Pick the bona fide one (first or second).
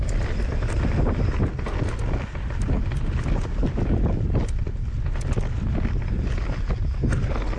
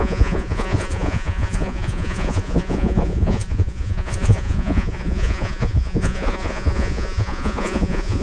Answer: first